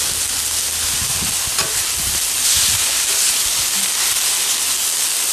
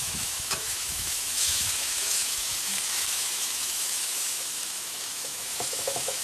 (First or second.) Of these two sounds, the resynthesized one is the second